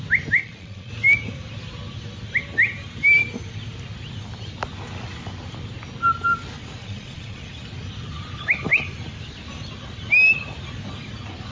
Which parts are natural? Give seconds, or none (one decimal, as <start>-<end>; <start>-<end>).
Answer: 0.0-0.4; 0.9-6.8; 7.5-11.5